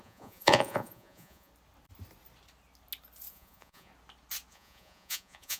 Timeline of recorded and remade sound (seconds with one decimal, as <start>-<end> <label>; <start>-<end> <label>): 0.0-1.5 remade; 1.5-3.3 recorded; 3.3-3.9 remade; 3.9-4.5 recorded; 4.5-5.6 remade